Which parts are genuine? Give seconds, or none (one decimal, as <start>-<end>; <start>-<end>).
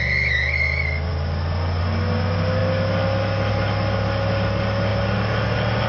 0.0-5.9